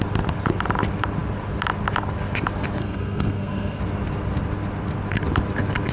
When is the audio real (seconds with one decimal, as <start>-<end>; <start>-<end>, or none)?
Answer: 0.0-2.8; 3.8-5.9